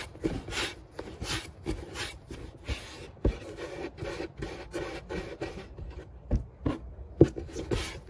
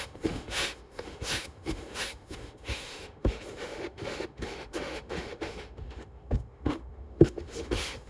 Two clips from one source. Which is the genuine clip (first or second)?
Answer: first